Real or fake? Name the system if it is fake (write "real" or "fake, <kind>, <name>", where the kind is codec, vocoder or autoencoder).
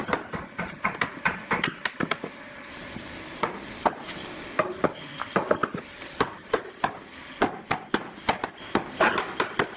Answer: real